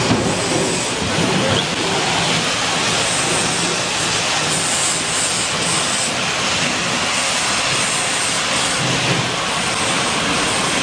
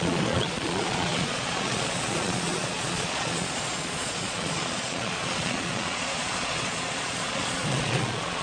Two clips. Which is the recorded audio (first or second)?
first